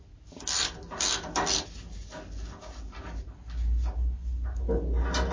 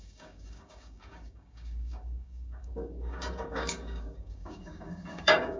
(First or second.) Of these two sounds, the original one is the first